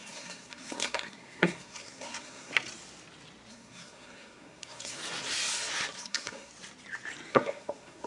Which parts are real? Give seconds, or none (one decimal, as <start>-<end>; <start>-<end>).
2.5-3.5; 5.0-6.0; 6.5-7.3